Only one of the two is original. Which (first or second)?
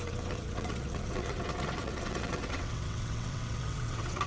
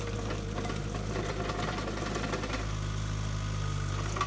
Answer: second